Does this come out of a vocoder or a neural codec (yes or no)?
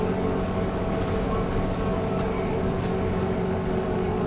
yes